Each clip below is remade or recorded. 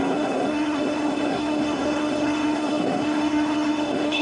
remade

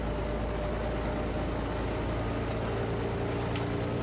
recorded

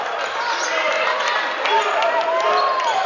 recorded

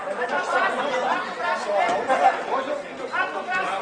recorded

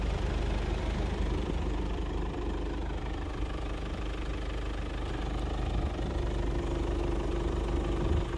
remade